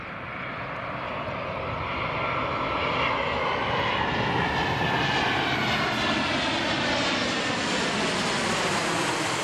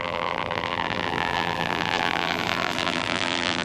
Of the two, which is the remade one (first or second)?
second